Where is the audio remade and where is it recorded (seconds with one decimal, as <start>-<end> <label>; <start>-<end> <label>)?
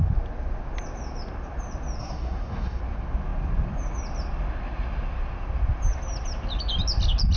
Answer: 0.0-2.0 recorded; 2.0-2.8 remade; 2.8-7.4 recorded